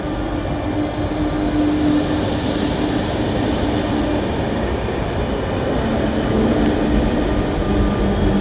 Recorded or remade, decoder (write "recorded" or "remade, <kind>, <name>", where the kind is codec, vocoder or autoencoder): recorded